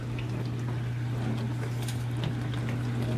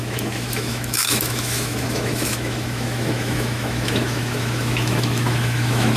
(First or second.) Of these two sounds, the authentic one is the first